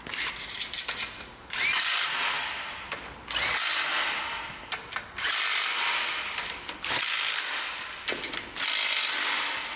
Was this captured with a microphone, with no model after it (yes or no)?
yes